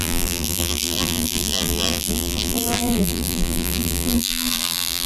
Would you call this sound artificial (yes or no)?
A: yes